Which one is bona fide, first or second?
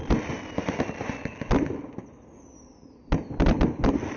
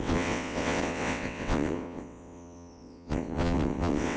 first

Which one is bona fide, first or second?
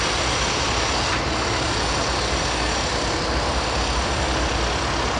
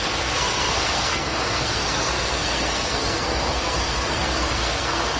first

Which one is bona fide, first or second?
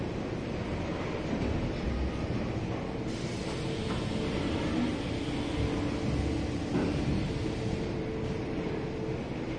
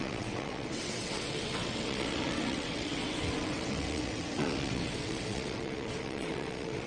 first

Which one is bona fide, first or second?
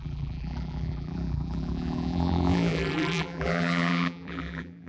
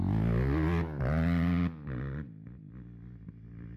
second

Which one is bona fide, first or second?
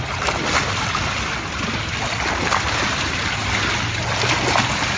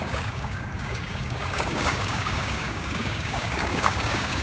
first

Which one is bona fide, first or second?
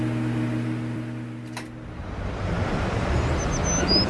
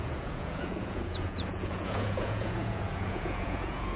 first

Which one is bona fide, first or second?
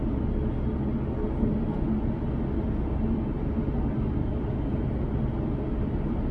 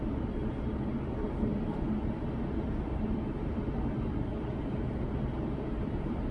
first